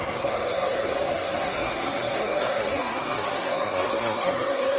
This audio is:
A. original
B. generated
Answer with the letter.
B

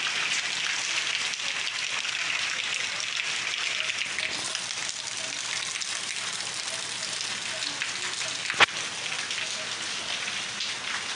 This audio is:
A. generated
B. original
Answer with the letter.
B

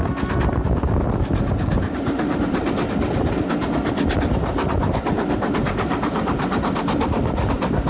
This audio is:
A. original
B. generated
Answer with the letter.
A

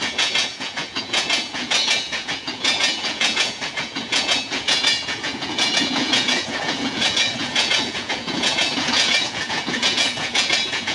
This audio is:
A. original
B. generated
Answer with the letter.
B